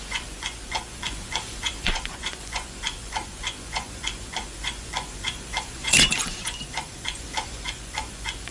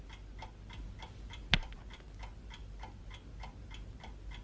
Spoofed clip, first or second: first